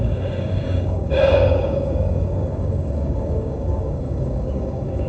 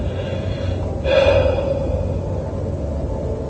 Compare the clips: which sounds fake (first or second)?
first